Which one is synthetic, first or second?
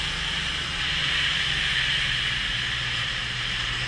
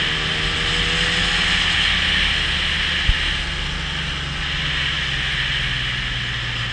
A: first